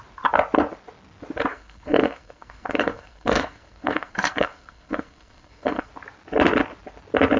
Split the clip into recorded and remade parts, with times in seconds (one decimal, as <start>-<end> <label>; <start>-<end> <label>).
0.0-1.5 recorded; 1.5-5.9 remade; 5.9-7.4 recorded